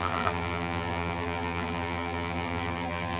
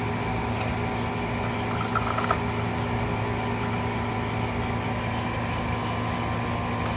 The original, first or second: second